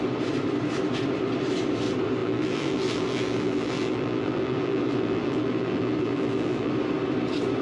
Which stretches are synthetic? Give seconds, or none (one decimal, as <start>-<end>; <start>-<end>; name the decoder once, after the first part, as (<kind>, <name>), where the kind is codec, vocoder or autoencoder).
2.2-6.7 (vocoder, BigVGAN v2)